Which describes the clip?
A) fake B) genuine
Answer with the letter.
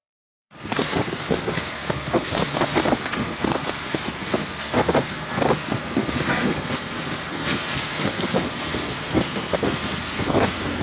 A